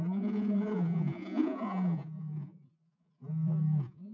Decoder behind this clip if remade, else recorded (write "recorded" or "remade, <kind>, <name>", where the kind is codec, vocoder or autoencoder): remade, vocoder, Vocos